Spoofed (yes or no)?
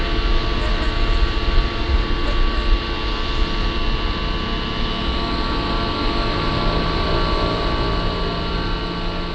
no